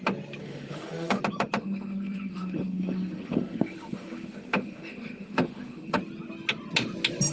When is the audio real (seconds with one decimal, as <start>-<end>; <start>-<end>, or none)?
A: 0.0-0.4; 1.2-1.6; 6.0-7.3

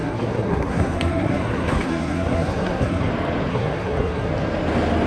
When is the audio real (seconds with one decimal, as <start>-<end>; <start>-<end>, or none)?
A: 3.1-3.5; 4.3-5.1

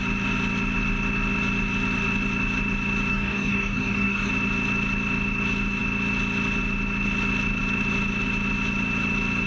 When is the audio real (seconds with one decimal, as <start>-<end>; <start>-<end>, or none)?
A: 0.0-3.1; 4.3-9.5

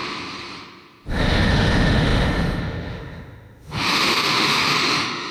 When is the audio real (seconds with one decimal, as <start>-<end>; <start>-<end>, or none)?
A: 0.0-1.1